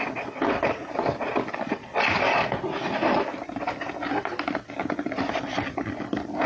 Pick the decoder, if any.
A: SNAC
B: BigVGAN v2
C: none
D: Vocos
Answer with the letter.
C